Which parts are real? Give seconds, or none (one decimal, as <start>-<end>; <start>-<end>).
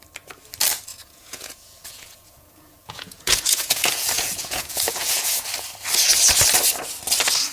0.0-0.9; 5.4-7.5